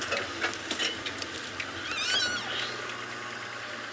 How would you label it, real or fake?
real